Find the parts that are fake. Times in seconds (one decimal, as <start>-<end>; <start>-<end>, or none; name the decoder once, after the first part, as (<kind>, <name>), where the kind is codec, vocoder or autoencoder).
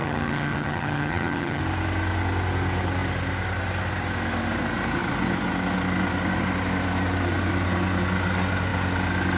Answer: 0.0-1.6 (vocoder, HiFi-GAN)